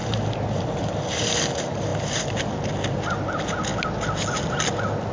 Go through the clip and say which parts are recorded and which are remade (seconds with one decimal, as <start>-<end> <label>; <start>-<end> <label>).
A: 0.0-1.1 remade; 1.1-5.1 recorded

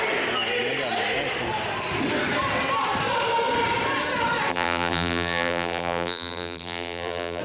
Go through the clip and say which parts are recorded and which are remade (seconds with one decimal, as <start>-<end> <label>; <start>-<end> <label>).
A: 0.0-4.5 recorded; 4.5-7.4 remade

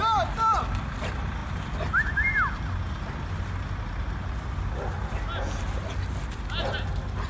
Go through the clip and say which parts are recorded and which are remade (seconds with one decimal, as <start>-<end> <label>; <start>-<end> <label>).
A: 0.0-7.3 recorded